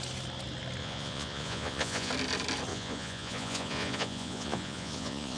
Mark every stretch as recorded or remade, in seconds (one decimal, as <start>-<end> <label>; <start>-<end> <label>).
0.0-0.8 recorded; 0.8-2.1 remade; 2.1-2.7 recorded; 2.7-5.4 remade